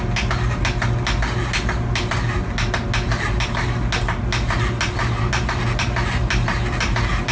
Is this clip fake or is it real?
real